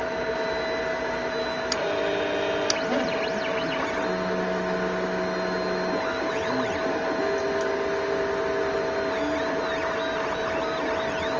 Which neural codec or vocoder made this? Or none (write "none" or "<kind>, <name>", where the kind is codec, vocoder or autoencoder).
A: none